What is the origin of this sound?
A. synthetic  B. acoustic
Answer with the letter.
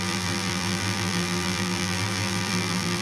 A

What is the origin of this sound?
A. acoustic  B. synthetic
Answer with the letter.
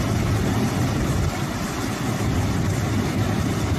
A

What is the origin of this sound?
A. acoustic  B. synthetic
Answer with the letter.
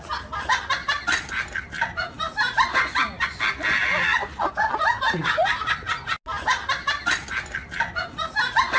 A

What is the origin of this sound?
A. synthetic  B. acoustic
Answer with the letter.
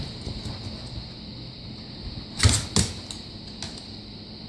B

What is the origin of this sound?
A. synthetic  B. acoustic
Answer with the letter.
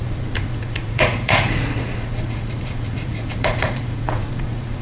A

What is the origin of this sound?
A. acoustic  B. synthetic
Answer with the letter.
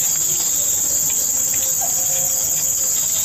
A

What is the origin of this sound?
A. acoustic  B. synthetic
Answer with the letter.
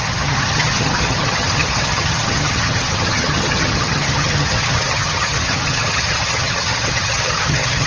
B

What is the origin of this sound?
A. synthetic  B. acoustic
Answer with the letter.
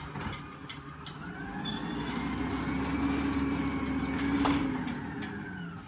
B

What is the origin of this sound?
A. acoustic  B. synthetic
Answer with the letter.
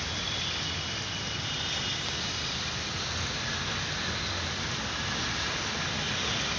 A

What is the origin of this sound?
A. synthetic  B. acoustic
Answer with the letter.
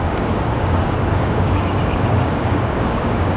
A